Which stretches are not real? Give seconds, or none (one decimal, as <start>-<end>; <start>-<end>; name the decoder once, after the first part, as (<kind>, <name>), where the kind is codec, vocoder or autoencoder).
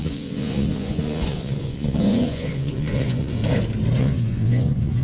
0.0-3.4 (vocoder, Vocos); 4.0-5.0